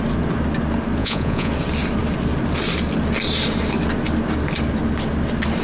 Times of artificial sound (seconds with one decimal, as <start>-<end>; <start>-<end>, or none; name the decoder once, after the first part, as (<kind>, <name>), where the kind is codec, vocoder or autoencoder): 1.0-1.5 (vocoder, Vocos)

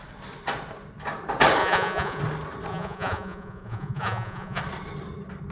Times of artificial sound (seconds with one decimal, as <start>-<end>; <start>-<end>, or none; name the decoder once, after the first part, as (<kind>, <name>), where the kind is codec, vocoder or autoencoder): 1.6-2.2 (vocoder, Vocos); 2.7-4.6

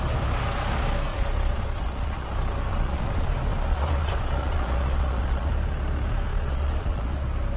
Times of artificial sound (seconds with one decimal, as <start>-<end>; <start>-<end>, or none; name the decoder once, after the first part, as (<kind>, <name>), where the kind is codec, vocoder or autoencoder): 1.1-2.3 (vocoder, Vocos); 2.7-3.3; 3.7-5.5; 6.3-7.1

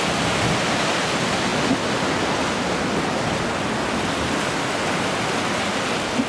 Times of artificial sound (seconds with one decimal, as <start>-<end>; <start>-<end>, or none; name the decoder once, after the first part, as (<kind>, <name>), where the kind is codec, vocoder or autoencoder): none

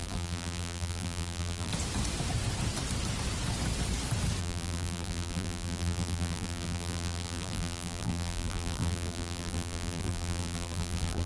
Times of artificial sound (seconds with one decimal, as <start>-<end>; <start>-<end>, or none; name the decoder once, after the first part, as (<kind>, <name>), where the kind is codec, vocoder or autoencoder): 0.0-1.7 (vocoder, BigVGAN v2); 4.4-11.3

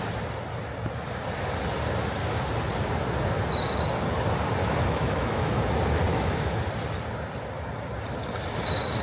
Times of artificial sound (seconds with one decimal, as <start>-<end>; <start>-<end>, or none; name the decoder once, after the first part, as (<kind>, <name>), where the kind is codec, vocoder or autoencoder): 4.6-5.6 (autoencoder, DAC-VAE); 6.1-6.6

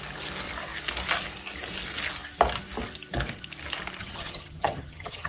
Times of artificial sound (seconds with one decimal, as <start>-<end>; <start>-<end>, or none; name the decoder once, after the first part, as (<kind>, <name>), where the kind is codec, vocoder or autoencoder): 4.0-5.3 (vocoder, HiFi-GAN)